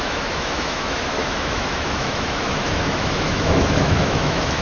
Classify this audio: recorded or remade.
remade